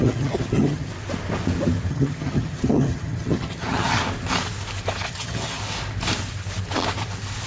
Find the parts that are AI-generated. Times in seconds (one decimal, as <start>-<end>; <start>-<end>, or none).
0.0-0.9; 1.9-4.0; 5.1-5.6